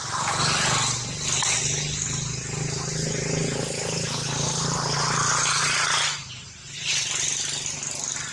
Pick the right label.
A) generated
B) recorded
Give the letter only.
B